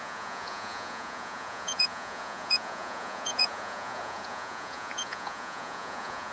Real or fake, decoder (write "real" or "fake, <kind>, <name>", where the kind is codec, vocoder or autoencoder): fake, vocoder, Vocos